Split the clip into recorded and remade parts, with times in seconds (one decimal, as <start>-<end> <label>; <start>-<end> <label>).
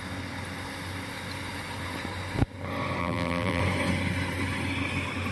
0.0-3.0 recorded; 3.0-3.6 remade; 3.6-5.3 recorded